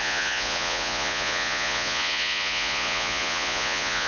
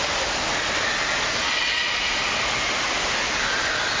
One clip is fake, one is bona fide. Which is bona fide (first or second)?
second